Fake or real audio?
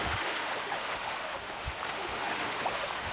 fake